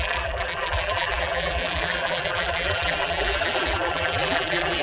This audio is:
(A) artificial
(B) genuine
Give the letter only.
A